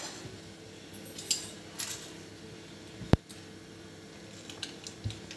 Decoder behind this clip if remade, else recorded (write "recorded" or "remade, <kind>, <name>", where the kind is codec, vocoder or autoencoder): recorded